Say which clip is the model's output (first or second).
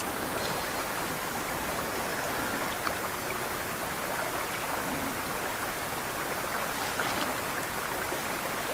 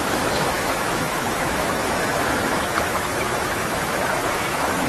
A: second